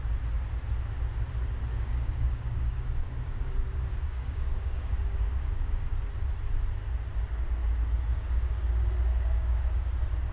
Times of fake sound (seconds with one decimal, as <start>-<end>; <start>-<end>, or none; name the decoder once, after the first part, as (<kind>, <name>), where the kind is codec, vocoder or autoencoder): 1.7-5.9 (codec, DAC); 8.1-8.7; 9.1-9.9